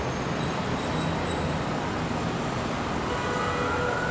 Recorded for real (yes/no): yes